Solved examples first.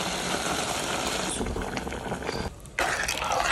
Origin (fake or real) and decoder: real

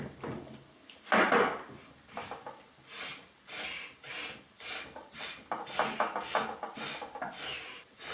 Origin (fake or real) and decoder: real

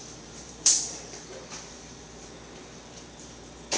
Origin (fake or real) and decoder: fake, vocoder, BigVGAN v2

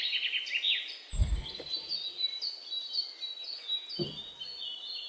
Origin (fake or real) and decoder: real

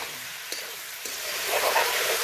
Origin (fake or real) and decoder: fake, vocoder, BigVGAN v2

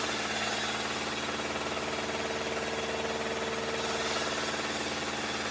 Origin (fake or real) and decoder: real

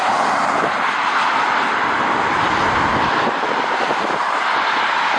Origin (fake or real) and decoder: real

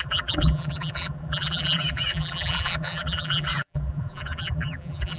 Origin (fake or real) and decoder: fake, vocoder, BigVGAN v2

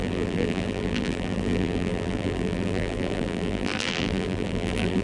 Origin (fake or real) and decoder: fake, vocoder, BigVGAN v2